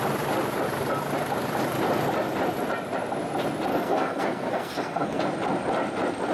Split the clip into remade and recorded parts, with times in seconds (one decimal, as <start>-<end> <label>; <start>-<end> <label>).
0.0-3.7 recorded; 3.7-5.2 remade; 5.2-6.3 recorded